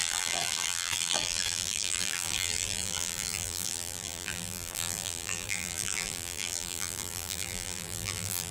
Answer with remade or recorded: remade